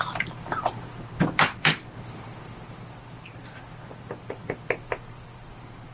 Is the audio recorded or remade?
recorded